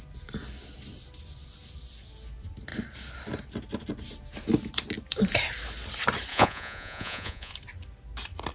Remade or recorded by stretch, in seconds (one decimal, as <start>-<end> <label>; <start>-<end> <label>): 0.0-6.3 recorded; 6.3-7.5 remade; 7.5-8.5 recorded